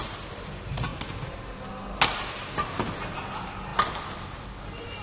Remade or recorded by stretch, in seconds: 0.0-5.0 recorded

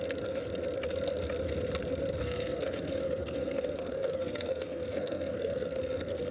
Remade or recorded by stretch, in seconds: 0.0-2.2 recorded; 2.2-6.3 remade

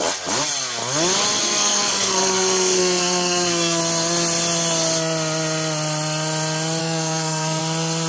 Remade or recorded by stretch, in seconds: 0.0-1.4 recorded; 1.4-3.8 remade; 3.8-6.8 recorded; 6.8-7.6 remade; 7.6-8.1 recorded

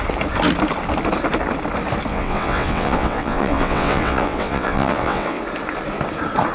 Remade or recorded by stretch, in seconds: 0.0-2.1 recorded; 2.1-5.4 remade; 5.4-6.5 recorded

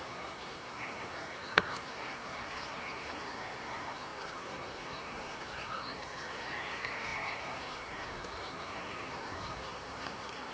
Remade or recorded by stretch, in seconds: 0.0-10.5 remade

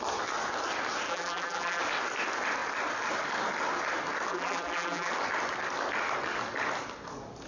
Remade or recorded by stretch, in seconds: 0.0-1.1 recorded; 1.1-1.8 remade; 1.8-4.3 recorded; 4.3-5.1 remade; 5.1-7.5 recorded

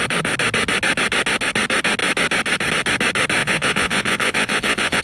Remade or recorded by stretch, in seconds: 0.0-3.4 recorded; 3.4-5.0 remade